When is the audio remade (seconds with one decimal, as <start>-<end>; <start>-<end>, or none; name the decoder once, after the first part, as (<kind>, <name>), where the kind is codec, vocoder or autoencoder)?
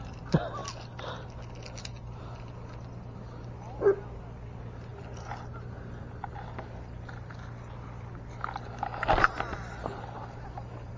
none